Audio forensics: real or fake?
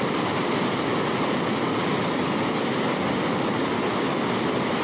real